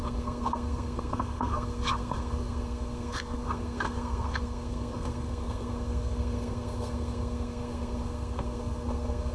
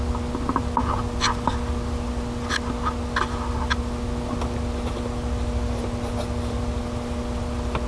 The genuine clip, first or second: second